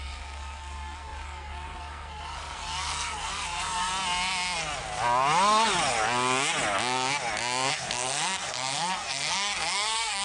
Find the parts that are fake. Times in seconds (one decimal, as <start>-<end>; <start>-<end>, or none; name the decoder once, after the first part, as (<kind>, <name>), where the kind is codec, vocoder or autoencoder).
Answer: 0.0-3.9 (codec, SNAC); 7.7-10.2